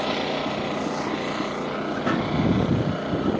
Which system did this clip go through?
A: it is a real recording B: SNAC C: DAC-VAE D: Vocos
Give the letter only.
A